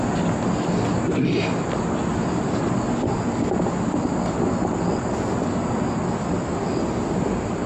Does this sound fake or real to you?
real